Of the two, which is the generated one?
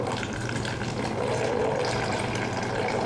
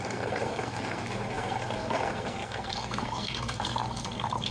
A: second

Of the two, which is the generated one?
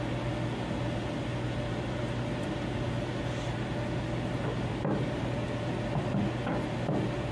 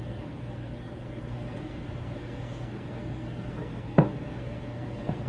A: second